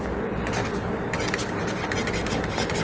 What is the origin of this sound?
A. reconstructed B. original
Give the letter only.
B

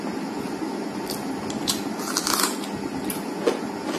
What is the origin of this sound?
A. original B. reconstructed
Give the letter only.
A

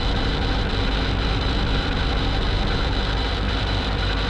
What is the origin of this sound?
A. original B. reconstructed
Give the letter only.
B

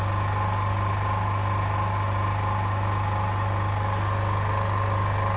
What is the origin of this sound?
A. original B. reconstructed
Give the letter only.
A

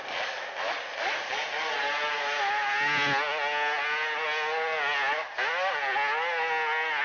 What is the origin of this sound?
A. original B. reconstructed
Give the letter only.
A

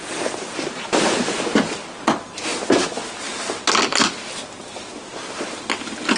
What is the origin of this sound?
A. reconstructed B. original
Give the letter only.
B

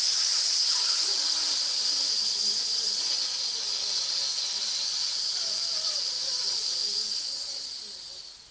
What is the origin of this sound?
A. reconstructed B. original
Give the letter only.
B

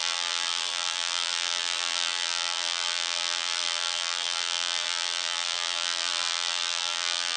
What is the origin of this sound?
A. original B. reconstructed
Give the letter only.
B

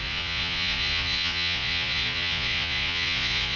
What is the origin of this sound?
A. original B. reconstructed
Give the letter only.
B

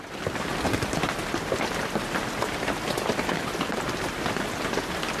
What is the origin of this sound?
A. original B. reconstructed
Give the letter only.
A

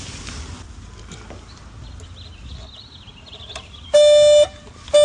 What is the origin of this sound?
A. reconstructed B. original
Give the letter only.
B